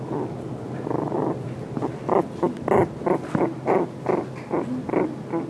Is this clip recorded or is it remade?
recorded